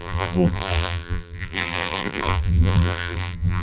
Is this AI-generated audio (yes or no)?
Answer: yes